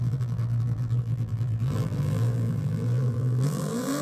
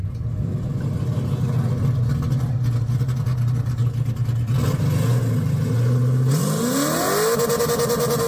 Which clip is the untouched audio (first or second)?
second